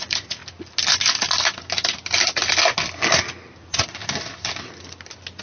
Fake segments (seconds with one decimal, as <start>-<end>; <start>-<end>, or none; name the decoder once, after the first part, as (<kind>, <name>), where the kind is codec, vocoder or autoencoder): 0.0-0.4 (vocoder, Vocos); 3.6-4.0